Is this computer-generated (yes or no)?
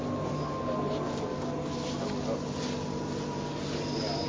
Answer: no